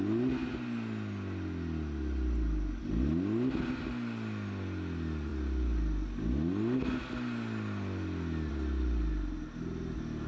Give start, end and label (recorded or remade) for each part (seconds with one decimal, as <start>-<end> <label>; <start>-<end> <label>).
0.0-10.3 recorded